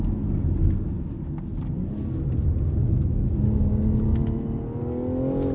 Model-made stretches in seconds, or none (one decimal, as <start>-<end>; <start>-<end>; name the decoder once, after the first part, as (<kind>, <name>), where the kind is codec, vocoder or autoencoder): none